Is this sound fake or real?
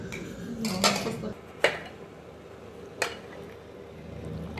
real